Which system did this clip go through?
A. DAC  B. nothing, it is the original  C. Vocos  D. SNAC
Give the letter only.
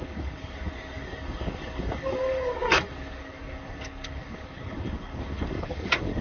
A